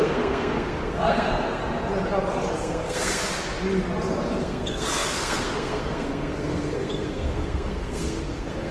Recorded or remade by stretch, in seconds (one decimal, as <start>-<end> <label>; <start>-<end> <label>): 0.0-1.6 remade; 1.6-2.5 recorded; 2.5-3.2 remade; 3.2-4.4 recorded; 4.4-8.7 remade